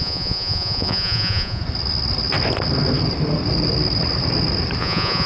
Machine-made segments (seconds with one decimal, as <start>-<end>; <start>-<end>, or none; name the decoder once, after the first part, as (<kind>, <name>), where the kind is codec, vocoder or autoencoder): 0.0-1.6 (vocoder, Vocos); 4.8-5.3